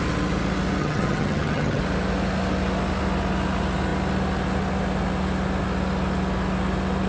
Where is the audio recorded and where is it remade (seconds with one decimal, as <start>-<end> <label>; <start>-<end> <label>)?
0.0-0.8 recorded; 0.8-1.8 remade; 1.8-7.1 recorded